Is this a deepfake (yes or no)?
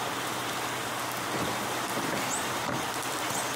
no